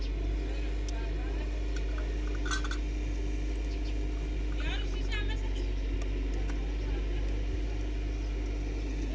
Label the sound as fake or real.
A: real